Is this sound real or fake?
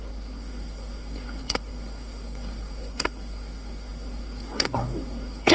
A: fake